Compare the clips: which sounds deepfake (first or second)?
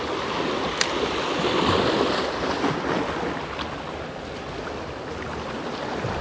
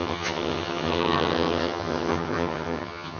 second